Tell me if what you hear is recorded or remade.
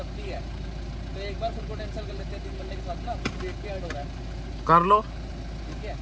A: recorded